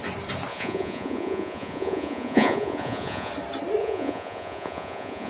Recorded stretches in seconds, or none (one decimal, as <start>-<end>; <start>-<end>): 0.0-0.5; 3.3-3.8